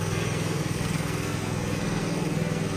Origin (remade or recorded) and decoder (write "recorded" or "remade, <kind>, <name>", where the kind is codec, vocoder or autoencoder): remade, codec, SNAC